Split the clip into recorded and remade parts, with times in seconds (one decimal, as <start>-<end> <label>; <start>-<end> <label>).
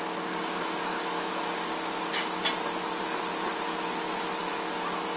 0.0-1.3 remade; 1.3-4.4 recorded; 4.4-5.2 remade